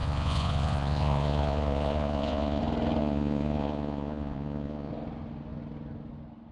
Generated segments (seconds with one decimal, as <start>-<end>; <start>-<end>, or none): 0.0-2.6; 3.0-4.9